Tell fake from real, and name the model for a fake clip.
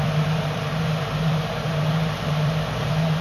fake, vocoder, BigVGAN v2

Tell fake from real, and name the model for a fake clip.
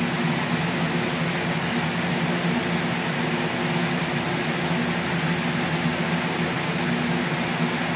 real